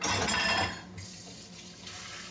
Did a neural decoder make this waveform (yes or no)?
no